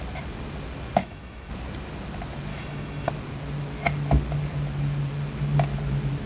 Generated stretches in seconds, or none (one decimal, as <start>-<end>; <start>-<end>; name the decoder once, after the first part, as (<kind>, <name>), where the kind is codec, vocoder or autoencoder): 1.0-1.5 (autoencoder, DAC-VAE); 2.5-3.1